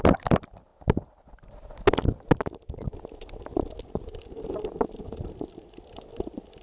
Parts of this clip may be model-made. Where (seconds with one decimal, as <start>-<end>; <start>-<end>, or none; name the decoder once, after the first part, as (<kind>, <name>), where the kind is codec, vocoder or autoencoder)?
none